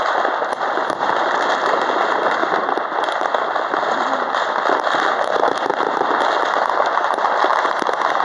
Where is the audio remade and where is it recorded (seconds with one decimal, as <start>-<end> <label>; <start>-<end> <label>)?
0.0-8.2 recorded